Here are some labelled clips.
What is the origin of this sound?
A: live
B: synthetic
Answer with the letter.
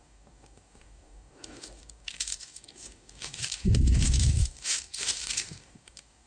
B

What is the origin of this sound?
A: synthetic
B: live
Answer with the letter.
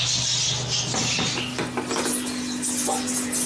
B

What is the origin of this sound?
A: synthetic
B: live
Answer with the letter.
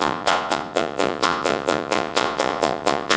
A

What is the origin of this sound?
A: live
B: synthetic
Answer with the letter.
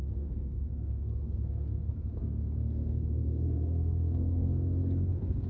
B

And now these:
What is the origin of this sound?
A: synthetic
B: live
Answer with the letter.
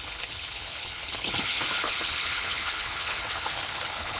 A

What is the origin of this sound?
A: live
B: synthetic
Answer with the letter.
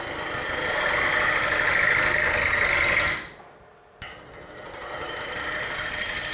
A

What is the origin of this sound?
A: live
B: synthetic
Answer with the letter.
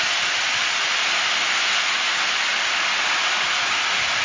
A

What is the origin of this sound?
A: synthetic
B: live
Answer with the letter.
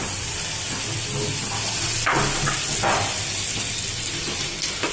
B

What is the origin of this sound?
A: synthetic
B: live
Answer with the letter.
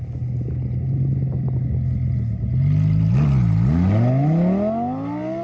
B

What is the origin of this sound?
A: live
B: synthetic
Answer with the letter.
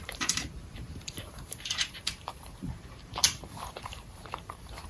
B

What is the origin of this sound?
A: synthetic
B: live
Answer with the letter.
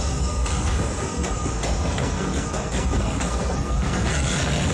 A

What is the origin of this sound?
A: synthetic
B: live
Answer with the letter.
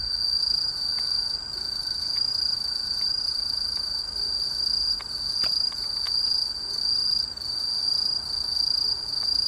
B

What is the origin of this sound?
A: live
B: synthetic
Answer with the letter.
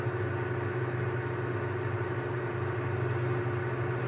A